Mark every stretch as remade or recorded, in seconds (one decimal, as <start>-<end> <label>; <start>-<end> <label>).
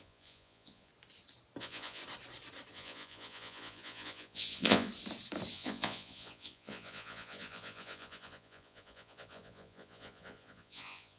0.0-0.9 remade; 0.9-1.6 recorded; 1.6-2.0 remade; 2.0-2.7 recorded; 2.7-4.9 remade; 4.9-5.5 recorded; 5.5-11.2 remade